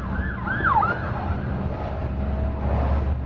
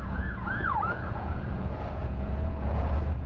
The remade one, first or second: second